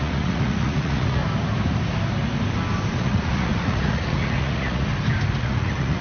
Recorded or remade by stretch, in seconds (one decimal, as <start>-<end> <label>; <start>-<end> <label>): 0.0-1.2 remade; 1.2-2.9 recorded; 2.9-4.9 remade; 4.9-5.4 recorded; 5.4-6.0 remade